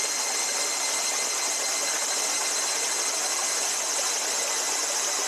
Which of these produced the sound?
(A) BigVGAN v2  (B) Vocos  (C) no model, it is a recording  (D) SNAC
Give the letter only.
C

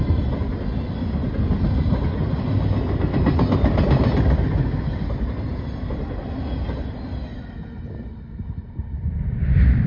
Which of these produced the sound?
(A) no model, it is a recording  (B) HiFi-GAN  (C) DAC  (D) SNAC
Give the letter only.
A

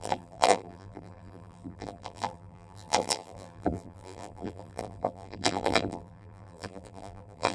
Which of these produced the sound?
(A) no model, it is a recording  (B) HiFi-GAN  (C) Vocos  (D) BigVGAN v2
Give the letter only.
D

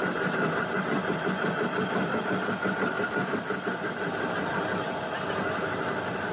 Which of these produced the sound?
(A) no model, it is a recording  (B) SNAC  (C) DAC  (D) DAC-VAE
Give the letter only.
A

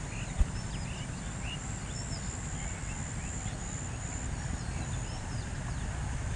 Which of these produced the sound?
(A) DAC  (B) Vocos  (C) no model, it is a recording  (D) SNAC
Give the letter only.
C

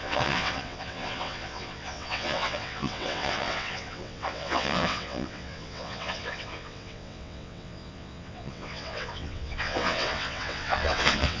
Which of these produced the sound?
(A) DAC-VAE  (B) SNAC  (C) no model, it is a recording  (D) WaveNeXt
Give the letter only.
D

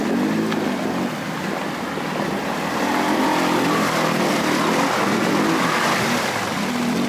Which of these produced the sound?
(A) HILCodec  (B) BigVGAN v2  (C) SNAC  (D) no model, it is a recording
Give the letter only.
D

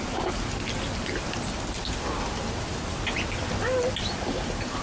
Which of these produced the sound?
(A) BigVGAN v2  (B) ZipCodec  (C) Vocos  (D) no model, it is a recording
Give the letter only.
D